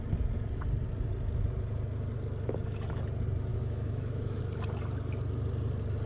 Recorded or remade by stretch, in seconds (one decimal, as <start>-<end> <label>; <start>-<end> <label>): 0.0-3.5 recorded; 3.5-4.4 remade; 4.4-6.1 recorded